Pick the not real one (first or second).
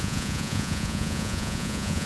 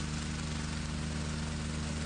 first